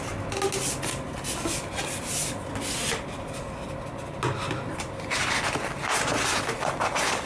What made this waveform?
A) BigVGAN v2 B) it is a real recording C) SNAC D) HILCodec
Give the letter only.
B